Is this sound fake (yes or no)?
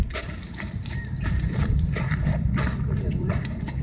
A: yes